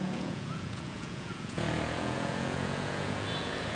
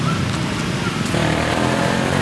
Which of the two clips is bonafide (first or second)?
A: second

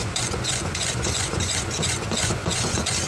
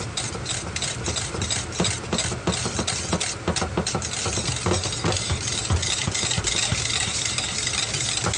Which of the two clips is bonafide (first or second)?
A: second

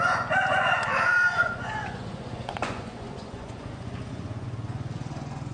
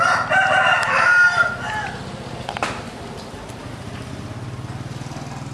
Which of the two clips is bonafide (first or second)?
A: second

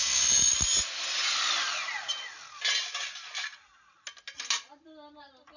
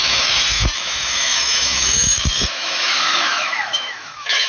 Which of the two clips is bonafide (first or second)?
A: first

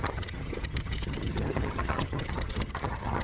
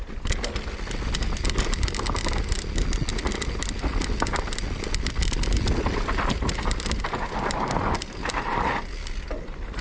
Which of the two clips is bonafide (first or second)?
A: second